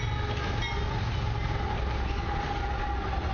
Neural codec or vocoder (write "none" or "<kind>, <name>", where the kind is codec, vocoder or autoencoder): none